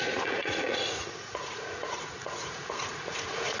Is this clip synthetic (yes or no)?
yes